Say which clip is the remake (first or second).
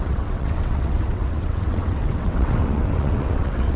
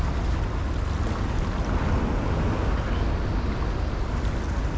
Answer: first